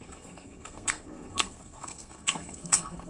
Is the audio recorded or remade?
remade